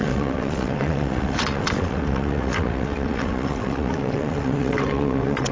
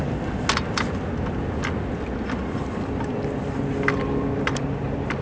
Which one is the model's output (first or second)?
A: first